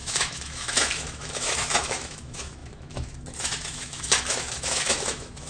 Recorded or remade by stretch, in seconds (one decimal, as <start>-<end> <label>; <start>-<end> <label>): 0.0-5.5 remade